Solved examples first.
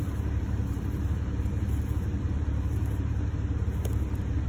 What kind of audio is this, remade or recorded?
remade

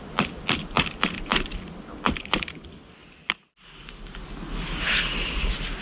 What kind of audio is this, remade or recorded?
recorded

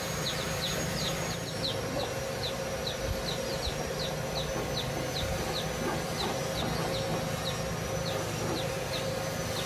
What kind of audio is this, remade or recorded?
recorded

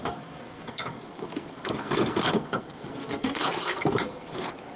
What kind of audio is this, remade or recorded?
remade